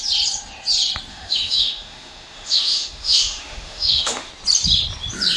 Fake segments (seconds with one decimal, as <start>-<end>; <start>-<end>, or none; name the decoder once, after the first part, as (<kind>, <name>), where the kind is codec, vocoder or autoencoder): 1.1-4.3 (autoencoder, DAC-VAE)